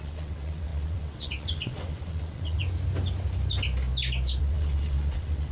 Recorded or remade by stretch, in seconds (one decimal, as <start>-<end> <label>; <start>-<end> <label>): 0.0-2.6 remade; 2.6-4.4 recorded; 4.4-5.5 remade